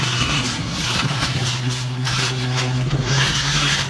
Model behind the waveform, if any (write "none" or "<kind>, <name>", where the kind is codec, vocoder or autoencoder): codec, SNAC